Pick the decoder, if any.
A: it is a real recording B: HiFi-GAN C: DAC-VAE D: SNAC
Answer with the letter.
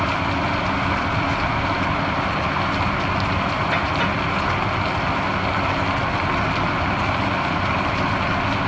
A